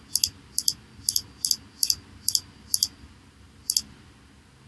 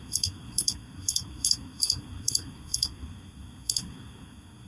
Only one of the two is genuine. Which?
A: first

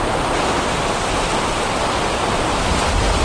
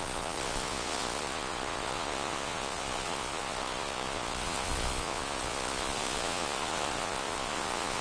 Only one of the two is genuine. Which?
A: first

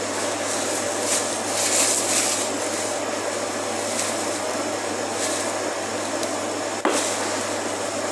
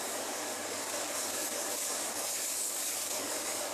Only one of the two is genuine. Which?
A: first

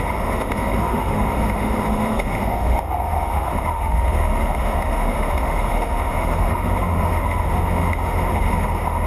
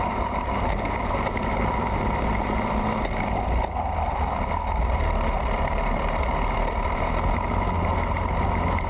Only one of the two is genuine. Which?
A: second